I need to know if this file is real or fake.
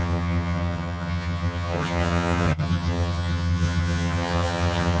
fake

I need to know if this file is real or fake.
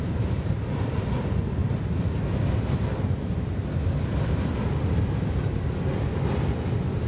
real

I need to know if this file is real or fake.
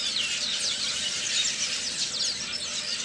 real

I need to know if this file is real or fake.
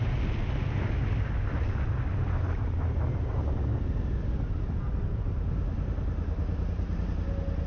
real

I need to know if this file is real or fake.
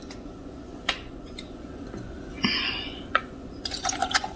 fake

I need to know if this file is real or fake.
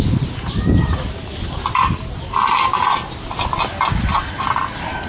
fake